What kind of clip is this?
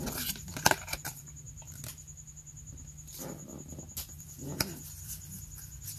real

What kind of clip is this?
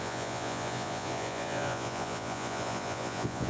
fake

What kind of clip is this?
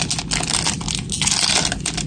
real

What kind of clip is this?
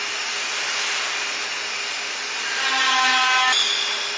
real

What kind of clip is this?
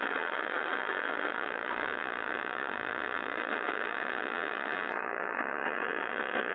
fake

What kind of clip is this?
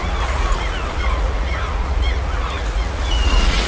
fake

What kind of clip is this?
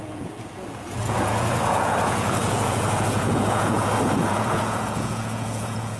fake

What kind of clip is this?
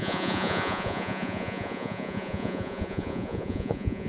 fake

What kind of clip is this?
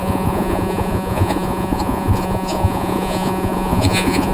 fake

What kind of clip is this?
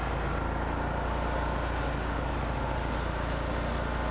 real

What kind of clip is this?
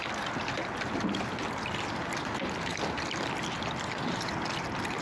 real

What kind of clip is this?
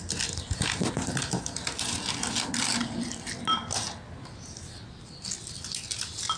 real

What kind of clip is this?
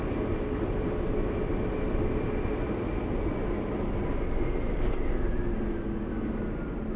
real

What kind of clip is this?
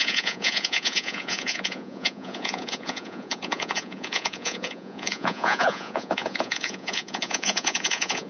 fake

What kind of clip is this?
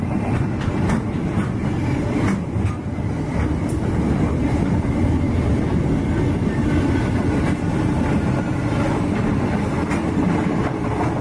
real